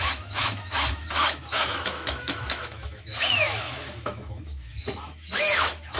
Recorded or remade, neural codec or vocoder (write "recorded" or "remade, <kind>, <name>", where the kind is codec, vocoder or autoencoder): remade, autoencoder, DAC-VAE